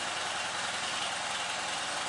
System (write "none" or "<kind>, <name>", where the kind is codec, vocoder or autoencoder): none